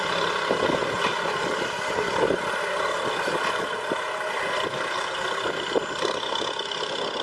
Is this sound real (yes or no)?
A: yes